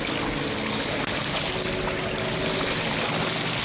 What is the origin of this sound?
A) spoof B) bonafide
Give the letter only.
B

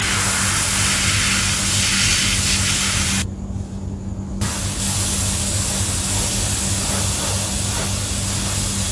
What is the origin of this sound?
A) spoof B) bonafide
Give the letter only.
B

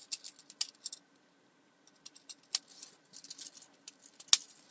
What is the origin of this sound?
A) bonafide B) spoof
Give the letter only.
A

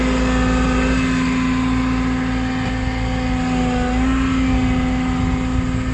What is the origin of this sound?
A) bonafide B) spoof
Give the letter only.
A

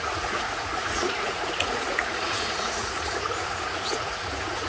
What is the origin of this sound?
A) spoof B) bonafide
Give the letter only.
A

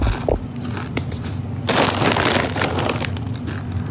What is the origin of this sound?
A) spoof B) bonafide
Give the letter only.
B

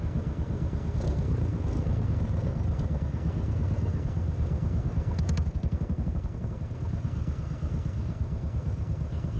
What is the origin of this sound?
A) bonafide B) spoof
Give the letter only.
B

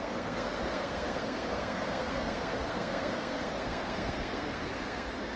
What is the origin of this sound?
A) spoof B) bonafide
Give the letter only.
A